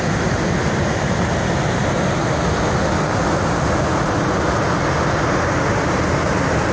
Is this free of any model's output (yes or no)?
yes